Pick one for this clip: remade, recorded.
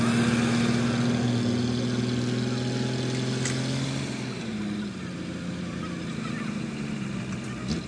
recorded